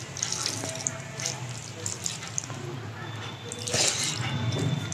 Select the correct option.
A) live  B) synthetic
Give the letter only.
A